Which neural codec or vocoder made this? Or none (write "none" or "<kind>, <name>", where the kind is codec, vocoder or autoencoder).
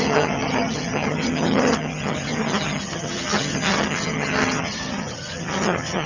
vocoder, HiFi-GAN